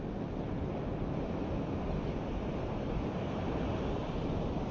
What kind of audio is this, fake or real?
real